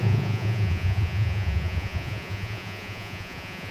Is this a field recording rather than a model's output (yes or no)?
no